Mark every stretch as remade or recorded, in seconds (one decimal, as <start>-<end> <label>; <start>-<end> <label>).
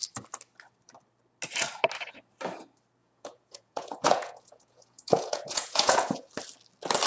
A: 0.0-3.0 recorded; 3.0-6.3 remade; 6.3-7.1 recorded